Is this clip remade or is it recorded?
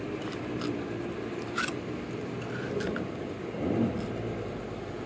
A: recorded